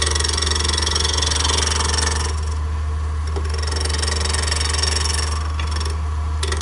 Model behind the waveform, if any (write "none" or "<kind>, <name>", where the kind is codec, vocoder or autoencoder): none